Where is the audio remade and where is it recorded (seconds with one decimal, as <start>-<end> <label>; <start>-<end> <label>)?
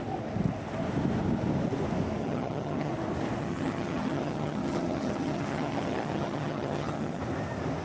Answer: 0.0-2.2 recorded; 2.2-2.9 remade; 2.9-3.4 recorded; 3.4-7.2 remade; 7.2-7.8 recorded